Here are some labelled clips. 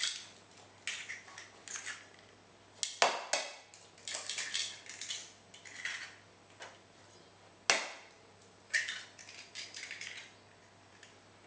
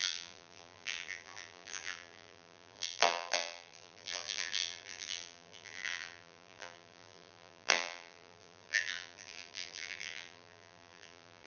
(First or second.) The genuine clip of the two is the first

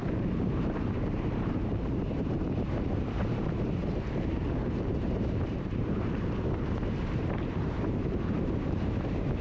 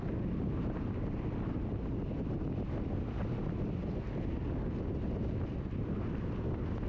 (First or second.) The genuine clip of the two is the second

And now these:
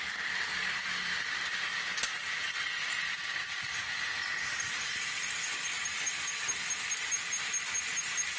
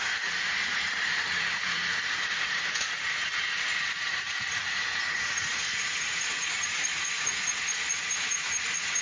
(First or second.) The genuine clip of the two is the first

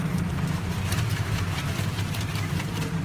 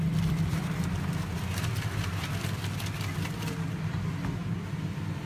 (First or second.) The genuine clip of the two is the second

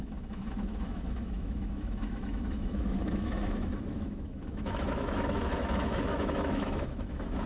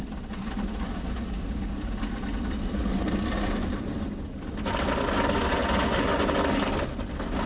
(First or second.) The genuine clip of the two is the second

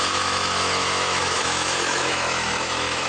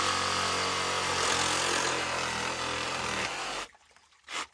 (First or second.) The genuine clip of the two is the second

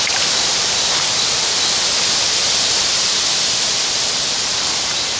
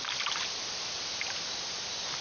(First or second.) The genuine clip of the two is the second